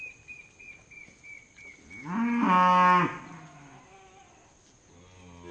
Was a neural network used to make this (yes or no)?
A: no